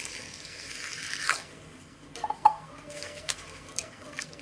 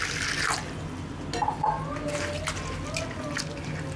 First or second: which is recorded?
second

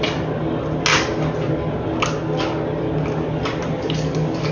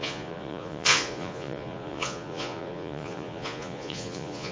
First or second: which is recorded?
first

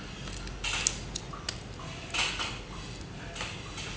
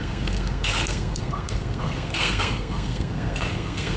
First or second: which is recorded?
first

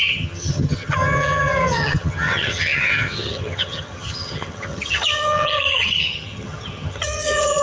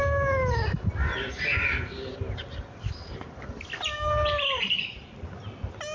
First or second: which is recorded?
second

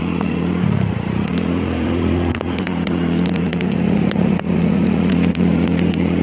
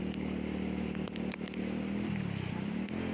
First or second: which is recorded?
second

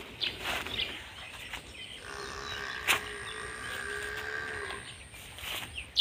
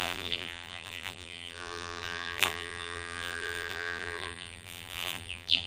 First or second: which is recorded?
first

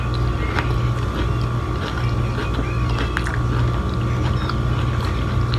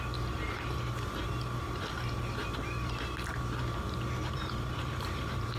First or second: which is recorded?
first